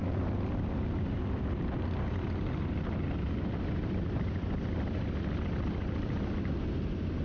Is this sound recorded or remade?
recorded